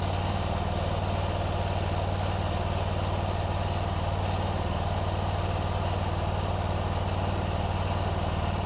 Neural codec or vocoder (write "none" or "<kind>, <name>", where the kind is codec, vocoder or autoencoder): none